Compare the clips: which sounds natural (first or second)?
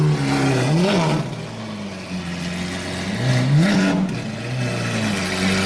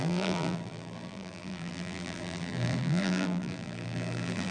first